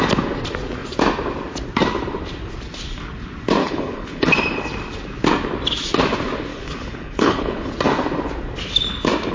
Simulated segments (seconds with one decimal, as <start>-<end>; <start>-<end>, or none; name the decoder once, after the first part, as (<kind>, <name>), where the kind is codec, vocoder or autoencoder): 3.6-4.3 (codec, HILCodec); 6.5-7.7